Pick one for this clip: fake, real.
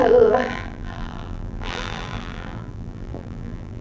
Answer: fake